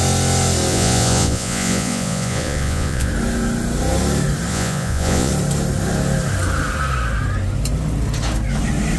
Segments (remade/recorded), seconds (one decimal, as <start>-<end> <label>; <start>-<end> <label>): 0.0-0.7 recorded; 0.7-3.1 remade; 3.1-4.5 recorded; 4.5-5.3 remade; 5.3-9.0 recorded